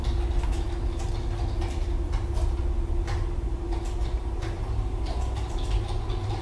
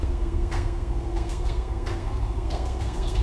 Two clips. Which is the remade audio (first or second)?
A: second